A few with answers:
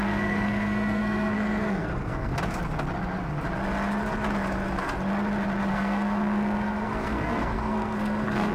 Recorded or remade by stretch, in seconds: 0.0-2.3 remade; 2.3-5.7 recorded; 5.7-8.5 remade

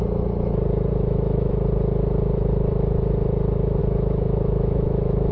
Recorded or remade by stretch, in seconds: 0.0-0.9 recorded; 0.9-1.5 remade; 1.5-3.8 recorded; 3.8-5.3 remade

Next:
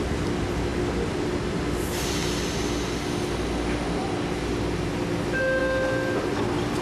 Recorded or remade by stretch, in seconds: 0.0-6.8 recorded

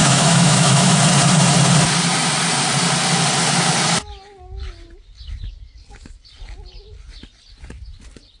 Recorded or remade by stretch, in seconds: 0.0-1.0 remade; 1.0-8.4 recorded

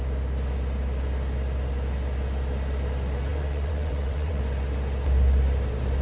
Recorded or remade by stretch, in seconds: 0.0-3.3 recorded; 3.3-4.4 remade; 4.4-6.0 recorded